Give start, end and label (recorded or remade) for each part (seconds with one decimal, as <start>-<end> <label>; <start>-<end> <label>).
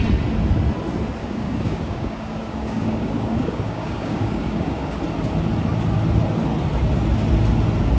0.0-1.2 recorded; 1.2-5.0 remade; 5.0-8.0 recorded